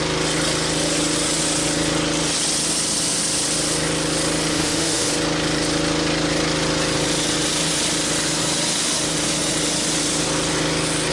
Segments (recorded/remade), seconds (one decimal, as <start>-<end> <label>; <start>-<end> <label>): 0.0-4.5 recorded; 4.5-5.1 remade; 5.1-11.1 recorded